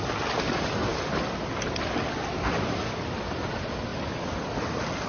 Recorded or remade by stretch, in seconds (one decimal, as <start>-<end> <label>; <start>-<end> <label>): 0.0-5.1 recorded